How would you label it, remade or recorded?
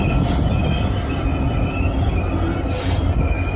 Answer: recorded